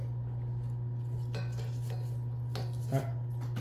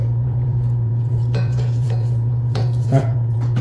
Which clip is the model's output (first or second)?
second